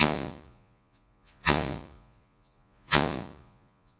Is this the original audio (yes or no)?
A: no